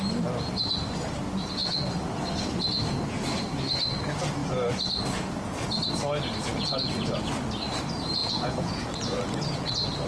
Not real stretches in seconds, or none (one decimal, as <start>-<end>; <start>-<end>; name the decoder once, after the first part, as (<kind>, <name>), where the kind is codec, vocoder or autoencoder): 6.5-7.2 (vocoder, Vocos); 8.2-9.7